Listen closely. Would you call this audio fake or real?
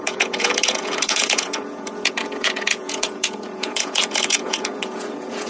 fake